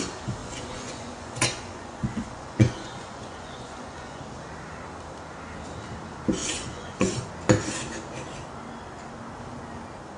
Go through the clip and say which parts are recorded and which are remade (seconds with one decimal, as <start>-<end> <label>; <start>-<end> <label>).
0.0-0.4 recorded; 0.4-4.2 remade; 4.2-6.4 recorded; 6.4-7.3 remade; 7.3-10.2 recorded